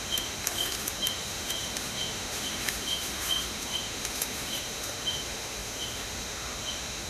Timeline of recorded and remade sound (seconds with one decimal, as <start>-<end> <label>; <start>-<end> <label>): 0.0-7.1 remade